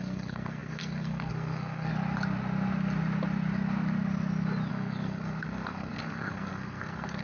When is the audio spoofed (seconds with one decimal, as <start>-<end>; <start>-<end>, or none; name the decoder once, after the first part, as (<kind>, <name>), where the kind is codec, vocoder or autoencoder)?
0.0-1.9 (codec, SNAC); 4.7-7.2